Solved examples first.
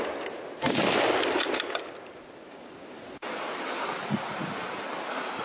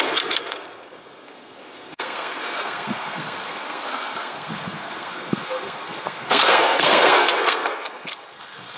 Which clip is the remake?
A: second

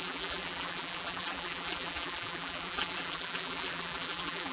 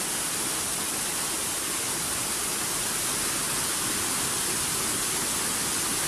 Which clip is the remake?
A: first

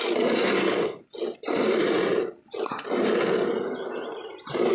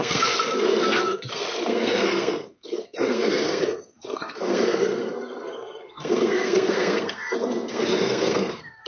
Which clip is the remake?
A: second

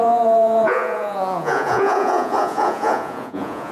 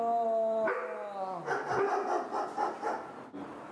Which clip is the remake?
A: first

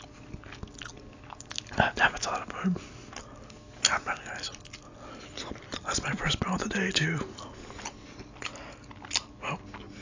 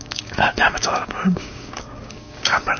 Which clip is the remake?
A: second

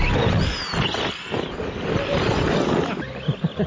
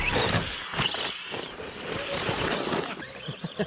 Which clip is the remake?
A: second